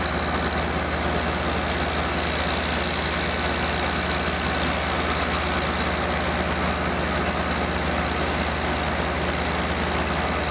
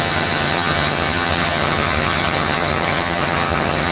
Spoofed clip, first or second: second